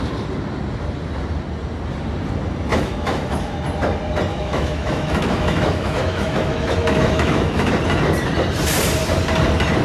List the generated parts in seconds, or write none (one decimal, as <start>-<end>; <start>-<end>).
2.7-3.6; 4.3-7.7